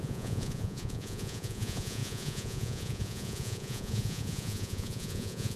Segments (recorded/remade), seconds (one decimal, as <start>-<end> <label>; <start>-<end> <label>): 0.0-5.6 remade